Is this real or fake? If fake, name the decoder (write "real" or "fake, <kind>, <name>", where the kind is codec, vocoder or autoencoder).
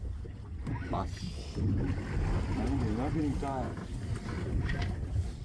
real